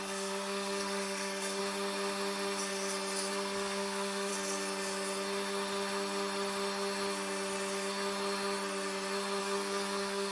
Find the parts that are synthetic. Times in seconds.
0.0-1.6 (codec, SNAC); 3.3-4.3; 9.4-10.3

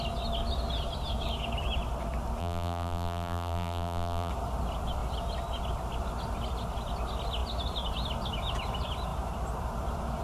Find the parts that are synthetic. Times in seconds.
2.4-4.3 (vocoder, BigVGAN v2)

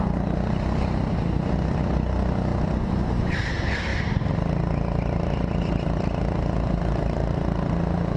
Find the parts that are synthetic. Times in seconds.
7.2-7.7 (vocoder, BigVGAN v2)